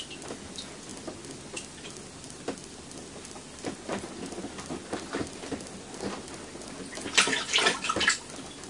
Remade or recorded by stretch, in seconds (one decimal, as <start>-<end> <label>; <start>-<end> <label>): 0.0-8.7 recorded